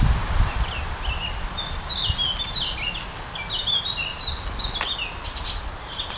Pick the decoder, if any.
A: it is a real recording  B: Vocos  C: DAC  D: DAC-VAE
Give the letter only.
A